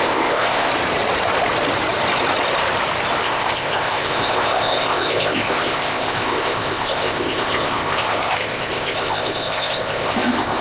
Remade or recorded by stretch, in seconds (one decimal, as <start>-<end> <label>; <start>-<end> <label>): 0.0-0.7 remade; 0.7-3.2 recorded; 3.2-10.6 remade